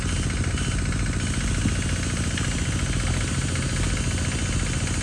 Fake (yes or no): no